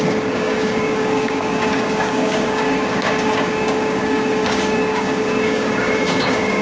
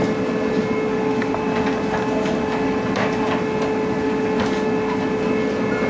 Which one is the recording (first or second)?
second